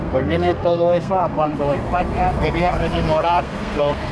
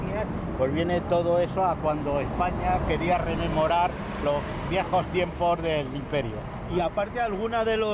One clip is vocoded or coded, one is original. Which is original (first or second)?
second